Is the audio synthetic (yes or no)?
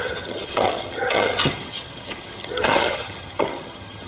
yes